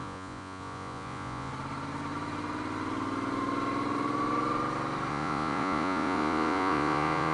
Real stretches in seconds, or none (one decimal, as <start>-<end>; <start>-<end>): 1.5-5.1